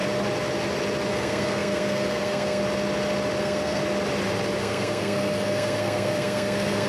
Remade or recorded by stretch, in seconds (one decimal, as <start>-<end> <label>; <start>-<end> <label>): 0.0-1.1 recorded; 1.1-2.6 remade; 2.6-3.4 recorded; 3.4-3.8 remade; 3.8-4.6 recorded; 4.6-6.9 remade